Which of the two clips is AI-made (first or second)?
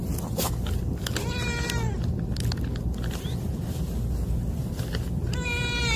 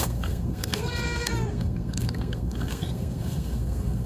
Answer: second